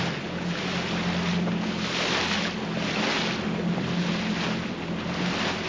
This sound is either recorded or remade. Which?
recorded